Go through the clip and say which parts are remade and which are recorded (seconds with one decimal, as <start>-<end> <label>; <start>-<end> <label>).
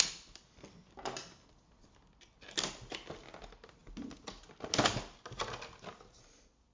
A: 0.0-6.7 recorded